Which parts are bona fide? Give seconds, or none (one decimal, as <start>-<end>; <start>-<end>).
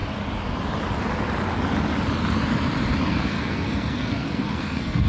0.0-3.1